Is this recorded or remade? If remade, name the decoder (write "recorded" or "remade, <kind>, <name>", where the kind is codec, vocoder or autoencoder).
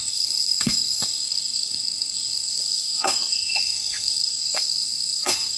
remade, codec, SNAC